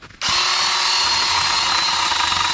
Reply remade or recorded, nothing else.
recorded